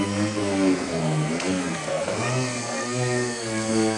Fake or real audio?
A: fake